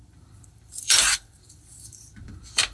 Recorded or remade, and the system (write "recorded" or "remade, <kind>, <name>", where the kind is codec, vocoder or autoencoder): remade, vocoder, BigVGAN v2